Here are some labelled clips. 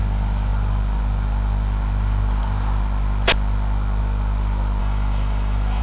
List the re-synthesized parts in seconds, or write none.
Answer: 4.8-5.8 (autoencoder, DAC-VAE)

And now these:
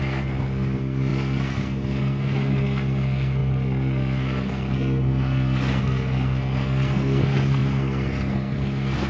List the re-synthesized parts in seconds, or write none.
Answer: 0.0-9.1 (codec, SNAC)

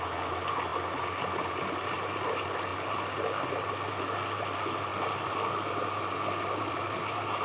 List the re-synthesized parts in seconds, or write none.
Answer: none